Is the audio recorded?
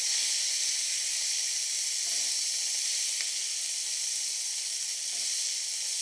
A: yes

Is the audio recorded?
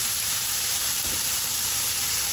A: no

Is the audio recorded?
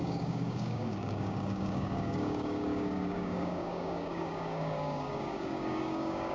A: no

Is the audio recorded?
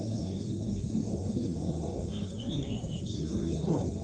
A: no